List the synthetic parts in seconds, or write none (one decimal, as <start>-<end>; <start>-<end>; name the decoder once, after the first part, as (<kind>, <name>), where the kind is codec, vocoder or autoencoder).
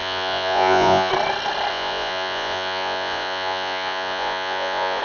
0.0-1.1 (vocoder, Vocos); 1.7-5.0